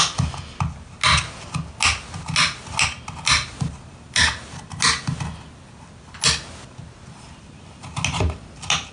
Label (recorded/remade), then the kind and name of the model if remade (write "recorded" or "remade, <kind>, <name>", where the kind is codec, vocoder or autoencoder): recorded